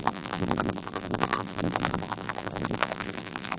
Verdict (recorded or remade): remade